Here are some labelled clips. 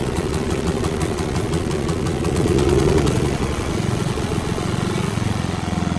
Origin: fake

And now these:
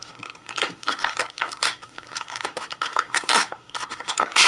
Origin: fake